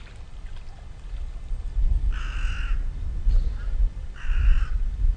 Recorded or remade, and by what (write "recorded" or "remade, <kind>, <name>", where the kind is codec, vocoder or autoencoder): recorded